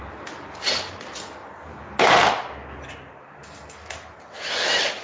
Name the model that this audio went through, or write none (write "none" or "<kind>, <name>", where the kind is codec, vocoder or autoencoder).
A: none